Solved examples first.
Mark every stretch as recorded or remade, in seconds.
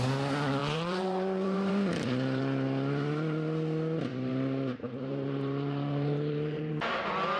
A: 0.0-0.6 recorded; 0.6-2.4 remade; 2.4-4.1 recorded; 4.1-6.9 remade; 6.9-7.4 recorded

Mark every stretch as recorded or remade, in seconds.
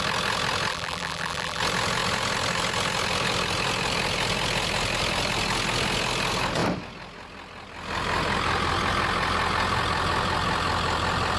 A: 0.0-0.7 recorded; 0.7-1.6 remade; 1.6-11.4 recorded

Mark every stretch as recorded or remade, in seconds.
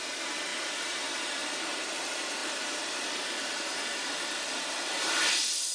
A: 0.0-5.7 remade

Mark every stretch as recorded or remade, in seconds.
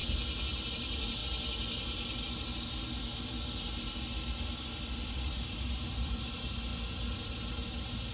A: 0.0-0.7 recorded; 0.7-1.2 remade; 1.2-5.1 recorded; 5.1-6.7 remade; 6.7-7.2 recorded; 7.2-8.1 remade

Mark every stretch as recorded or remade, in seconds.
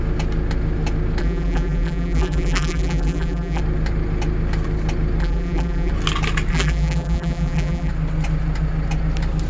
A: 0.0-1.2 recorded; 1.2-3.6 remade; 3.6-5.2 recorded; 5.2-5.9 remade; 5.9-6.5 recorded; 6.5-7.9 remade; 7.9-9.5 recorded